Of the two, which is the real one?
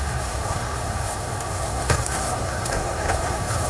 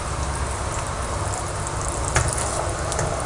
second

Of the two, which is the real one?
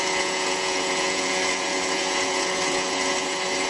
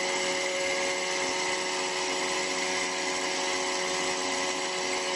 second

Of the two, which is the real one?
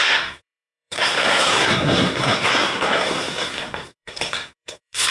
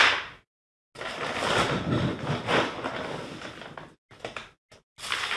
second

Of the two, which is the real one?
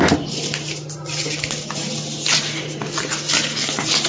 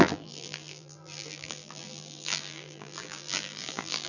first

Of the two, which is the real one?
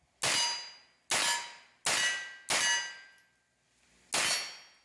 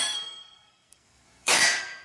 first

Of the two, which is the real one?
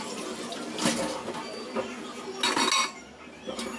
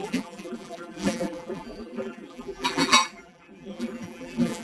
first